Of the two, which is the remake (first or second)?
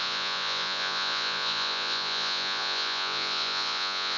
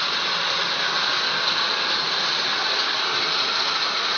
first